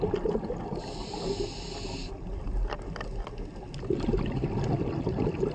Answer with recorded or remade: recorded